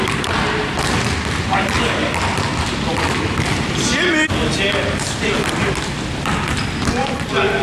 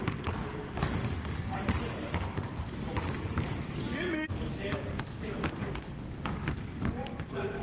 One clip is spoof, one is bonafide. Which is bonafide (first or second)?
first